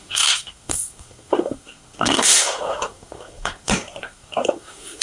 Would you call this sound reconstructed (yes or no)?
yes